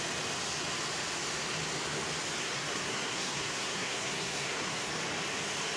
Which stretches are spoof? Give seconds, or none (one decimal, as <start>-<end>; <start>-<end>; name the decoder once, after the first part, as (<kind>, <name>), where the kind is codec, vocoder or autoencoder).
2.4-4.9 (codec, SNAC)